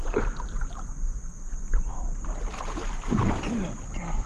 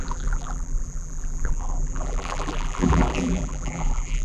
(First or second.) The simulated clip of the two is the second